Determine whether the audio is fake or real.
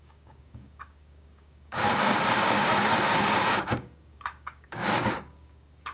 fake